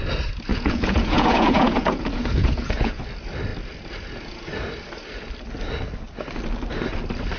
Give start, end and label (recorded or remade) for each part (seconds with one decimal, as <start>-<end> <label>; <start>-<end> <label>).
0.0-0.5 recorded; 0.5-3.0 remade; 3.0-7.4 recorded